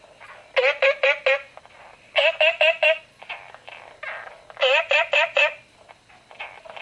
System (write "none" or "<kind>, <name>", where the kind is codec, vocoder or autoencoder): none